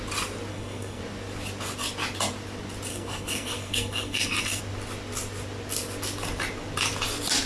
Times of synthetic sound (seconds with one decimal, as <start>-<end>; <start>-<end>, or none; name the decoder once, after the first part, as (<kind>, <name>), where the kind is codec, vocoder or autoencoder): 0.5-1.0 (codec, SNAC); 2.9-4.6